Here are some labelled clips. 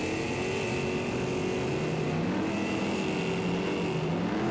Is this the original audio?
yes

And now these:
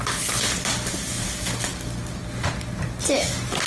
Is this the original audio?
yes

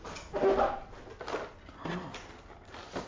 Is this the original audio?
yes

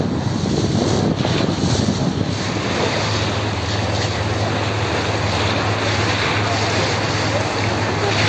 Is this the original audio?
yes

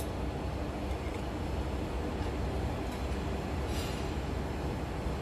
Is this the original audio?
yes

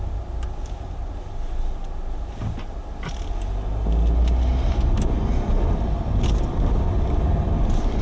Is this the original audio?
yes